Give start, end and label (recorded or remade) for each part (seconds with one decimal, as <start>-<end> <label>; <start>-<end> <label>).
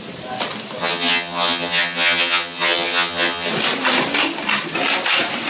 0.0-0.8 recorded; 0.8-3.5 remade; 3.5-5.5 recorded